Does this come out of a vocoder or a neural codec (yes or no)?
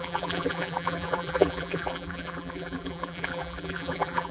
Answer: yes